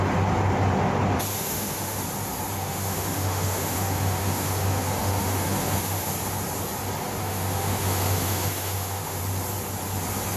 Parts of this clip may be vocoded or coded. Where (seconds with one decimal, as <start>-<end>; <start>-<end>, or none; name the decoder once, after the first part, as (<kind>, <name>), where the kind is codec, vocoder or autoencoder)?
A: 1.3-2.0 (autoencoder, DAC-VAE); 2.6-6.1; 7.2-9.2